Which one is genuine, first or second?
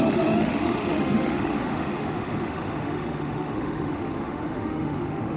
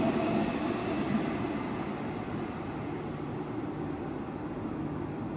second